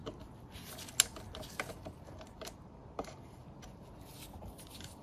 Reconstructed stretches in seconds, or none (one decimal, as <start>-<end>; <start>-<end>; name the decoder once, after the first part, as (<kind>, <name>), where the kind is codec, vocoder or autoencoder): 3.0-3.4 (vocoder, BigVGAN v2); 4.4-5.0